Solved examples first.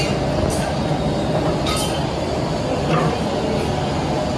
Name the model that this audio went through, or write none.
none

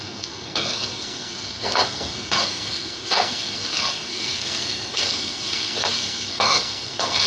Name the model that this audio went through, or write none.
codec, SNAC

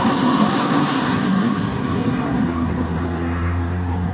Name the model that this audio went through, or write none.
codec, SNAC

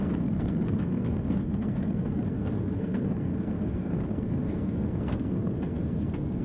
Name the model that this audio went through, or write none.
codec, SNAC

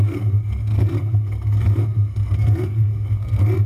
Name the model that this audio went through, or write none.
codec, SNAC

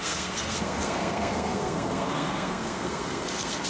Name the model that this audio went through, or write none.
codec, SNAC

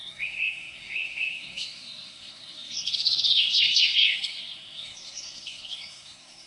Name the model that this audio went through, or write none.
codec, SNAC